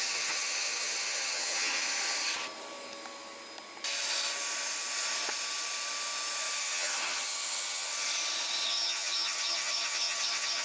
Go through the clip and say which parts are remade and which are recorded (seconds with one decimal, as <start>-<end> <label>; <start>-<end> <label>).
0.0-1.8 remade; 1.8-6.6 recorded; 6.6-7.9 remade; 7.9-8.7 recorded; 8.7-10.6 remade